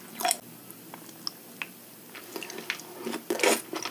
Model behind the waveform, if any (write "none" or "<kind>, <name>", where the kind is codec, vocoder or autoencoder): none